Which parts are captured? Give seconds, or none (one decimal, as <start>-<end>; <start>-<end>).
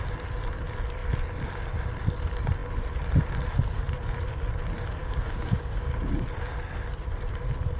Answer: 0.0-5.0; 6.2-7.8